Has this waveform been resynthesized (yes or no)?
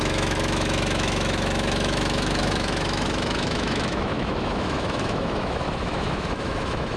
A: yes